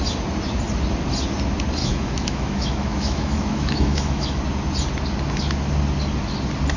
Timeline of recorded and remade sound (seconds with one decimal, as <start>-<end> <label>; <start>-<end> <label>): 0.0-1.8 recorded; 1.8-4.4 remade; 4.4-6.8 recorded